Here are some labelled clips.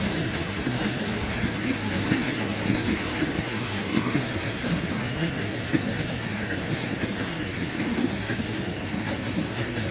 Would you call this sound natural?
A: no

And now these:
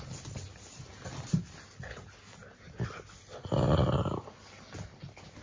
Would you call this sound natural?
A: yes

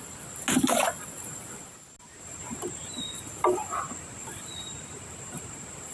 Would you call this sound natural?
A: yes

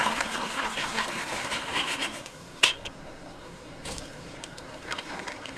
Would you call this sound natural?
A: no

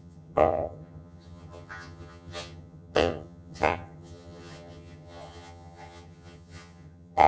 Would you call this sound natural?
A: no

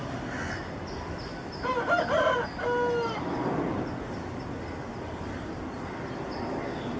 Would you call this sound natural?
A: yes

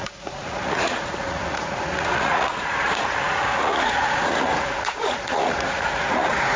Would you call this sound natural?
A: no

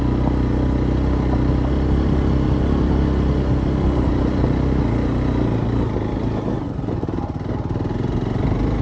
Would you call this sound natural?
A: yes